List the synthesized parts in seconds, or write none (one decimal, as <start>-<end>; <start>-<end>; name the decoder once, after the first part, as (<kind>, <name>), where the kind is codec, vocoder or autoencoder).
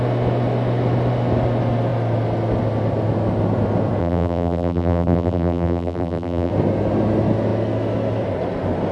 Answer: 4.0-6.5 (vocoder, BigVGAN v2)